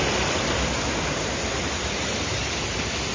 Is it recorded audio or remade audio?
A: recorded